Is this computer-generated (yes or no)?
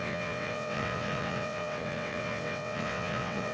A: yes